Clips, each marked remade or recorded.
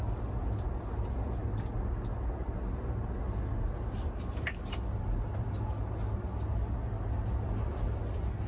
recorded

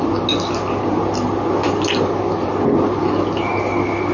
recorded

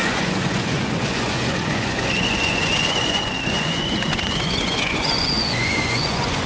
remade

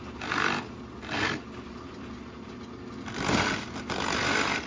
recorded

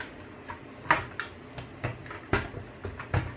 recorded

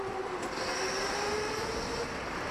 recorded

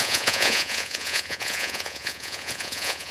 remade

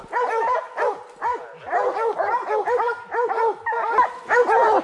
recorded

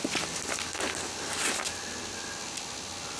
recorded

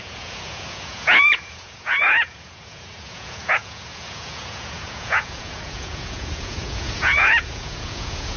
remade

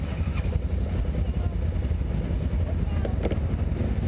recorded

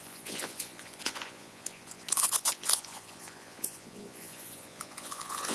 remade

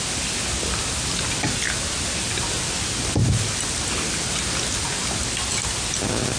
recorded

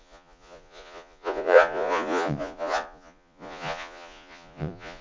remade